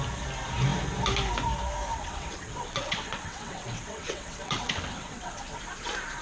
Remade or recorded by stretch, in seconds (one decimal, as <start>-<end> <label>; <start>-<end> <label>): 0.0-1.9 recorded; 1.9-5.6 remade; 5.6-6.2 recorded